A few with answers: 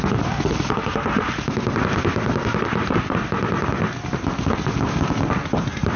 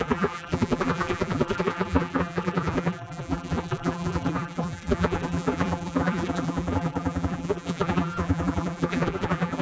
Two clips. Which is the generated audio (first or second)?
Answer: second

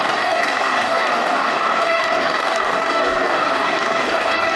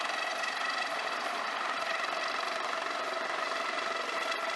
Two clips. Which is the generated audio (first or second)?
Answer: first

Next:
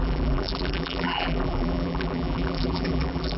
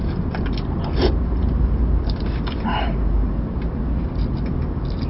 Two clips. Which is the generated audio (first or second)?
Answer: first